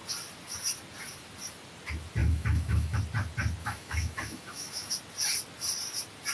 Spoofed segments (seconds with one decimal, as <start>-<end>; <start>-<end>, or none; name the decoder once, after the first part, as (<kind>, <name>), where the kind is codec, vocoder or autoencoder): 2.2-3.0 (autoencoder, DAC-VAE); 3.6-4.9